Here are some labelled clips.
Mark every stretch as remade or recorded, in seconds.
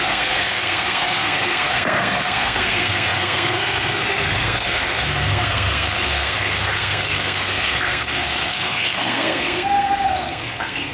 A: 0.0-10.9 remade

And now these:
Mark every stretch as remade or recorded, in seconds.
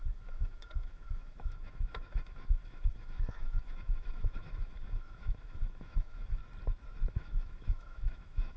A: 0.0-6.4 remade; 6.4-7.1 recorded; 7.1-8.6 remade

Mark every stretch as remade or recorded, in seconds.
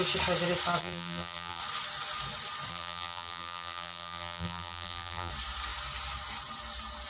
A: 0.0-0.8 recorded; 0.8-1.6 remade; 1.6-2.7 recorded; 2.7-5.3 remade; 5.3-7.1 recorded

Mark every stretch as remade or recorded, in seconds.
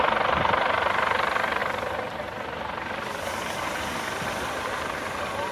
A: 0.0-5.5 recorded